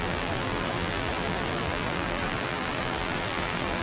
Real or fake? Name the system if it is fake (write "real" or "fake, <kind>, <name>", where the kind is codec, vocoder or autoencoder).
fake, vocoder, BigVGAN v2